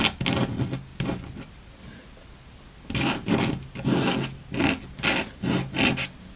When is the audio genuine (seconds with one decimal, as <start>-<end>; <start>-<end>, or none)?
0.0-6.4